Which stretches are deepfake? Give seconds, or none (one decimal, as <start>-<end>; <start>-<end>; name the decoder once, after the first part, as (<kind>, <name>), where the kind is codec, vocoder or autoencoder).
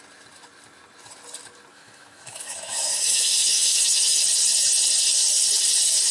1.7-4.2 (autoencoder, DAC-VAE)